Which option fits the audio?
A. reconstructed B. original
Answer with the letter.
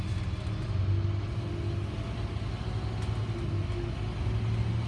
B